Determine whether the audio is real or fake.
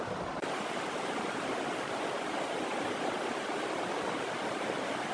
real